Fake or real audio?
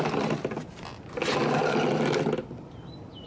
real